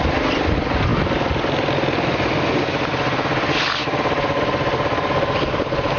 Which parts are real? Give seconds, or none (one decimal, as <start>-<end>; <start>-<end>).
0.0-6.0